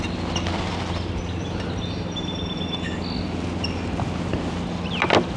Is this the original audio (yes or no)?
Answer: yes